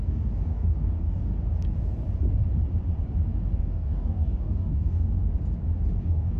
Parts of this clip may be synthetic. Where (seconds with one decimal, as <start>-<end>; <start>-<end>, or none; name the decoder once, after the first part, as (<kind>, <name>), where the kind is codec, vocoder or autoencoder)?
0.0-1.3 (codec, DAC); 3.6-5.3; 6.0-6.4